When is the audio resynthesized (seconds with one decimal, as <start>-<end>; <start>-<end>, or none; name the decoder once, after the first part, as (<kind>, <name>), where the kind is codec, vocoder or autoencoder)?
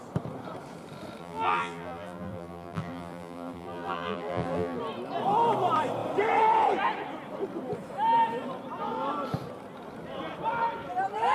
1.2-4.8 (vocoder, BigVGAN v2)